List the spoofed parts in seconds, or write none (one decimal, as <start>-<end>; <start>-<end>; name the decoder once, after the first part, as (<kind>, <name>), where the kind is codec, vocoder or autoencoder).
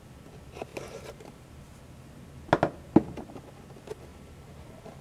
0.7-1.5 (vocoder, BigVGAN v2); 4.1-5.0